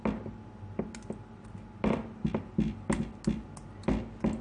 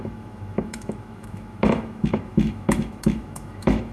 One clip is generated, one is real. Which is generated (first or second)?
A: second